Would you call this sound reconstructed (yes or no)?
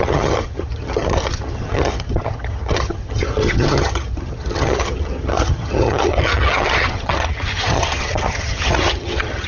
yes